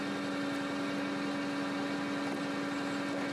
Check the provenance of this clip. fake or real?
real